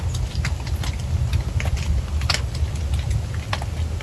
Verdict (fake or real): real